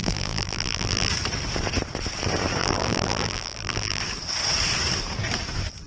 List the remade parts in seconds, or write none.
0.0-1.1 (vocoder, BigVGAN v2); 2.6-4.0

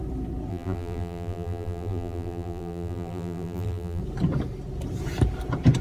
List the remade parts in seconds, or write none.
0.5-4.0 (vocoder, BigVGAN v2)

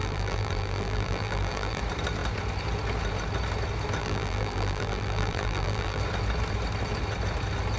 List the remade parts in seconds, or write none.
0.0-1.8 (vocoder, BigVGAN v2); 4.0-6.0

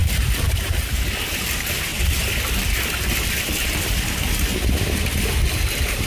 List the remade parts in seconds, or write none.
0.0-0.9 (vocoder, BigVGAN v2); 1.9-4.2

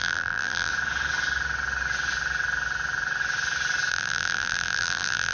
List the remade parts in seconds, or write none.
0.0-0.7 (vocoder, BigVGAN v2); 3.9-5.3

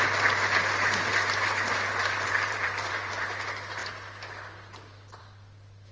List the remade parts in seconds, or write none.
2.0-3.1 (vocoder, BigVGAN v2)

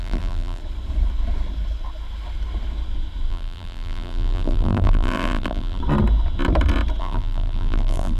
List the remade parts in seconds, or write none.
0.0-0.6 (vocoder, BigVGAN v2); 3.3-5.8; 7.0-8.2

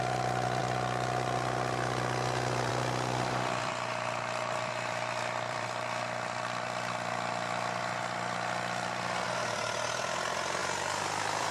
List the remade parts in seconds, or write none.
3.6-6.9 (vocoder, BigVGAN v2); 10.6-11.5